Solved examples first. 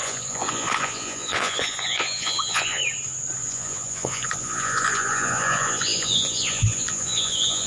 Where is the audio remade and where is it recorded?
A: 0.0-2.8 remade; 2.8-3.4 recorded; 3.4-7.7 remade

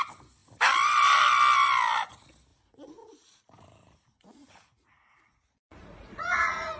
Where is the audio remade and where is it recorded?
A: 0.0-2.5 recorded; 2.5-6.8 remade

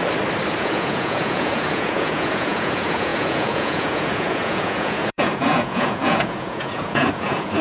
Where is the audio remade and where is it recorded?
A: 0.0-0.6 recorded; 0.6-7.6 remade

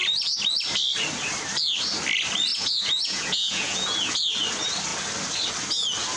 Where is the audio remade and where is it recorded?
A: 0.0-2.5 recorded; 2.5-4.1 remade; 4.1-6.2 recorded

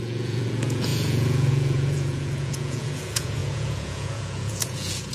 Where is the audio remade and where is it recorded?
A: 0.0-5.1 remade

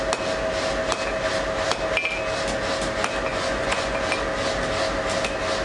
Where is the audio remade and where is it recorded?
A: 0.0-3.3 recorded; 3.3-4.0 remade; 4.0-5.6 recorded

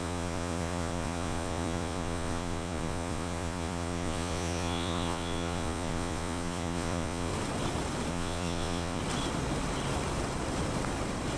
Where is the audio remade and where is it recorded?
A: 0.0-7.3 remade; 7.3-8.1 recorded; 8.1-9.0 remade; 9.0-11.4 recorded

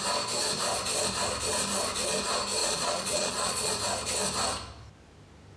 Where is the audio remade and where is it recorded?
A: 0.0-2.6 recorded; 2.6-3.7 remade; 3.7-5.6 recorded